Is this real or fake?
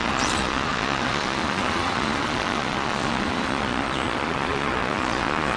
fake